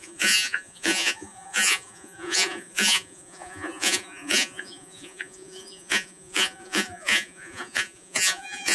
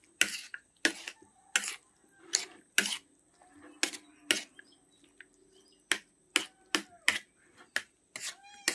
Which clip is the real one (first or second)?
second